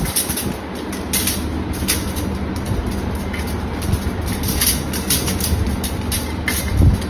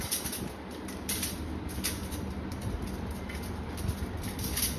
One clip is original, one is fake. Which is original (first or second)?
first